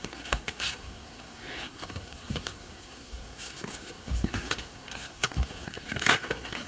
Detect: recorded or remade remade